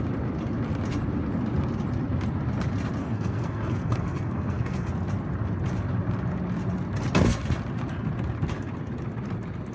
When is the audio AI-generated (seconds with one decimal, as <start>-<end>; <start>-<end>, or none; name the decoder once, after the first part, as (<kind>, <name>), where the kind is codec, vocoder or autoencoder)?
3.0-4.9 (codec, SNAC)